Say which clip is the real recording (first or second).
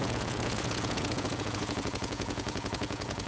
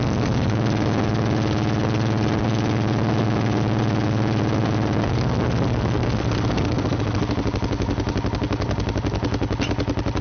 second